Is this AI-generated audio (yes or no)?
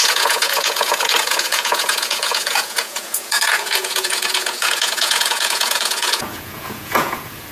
yes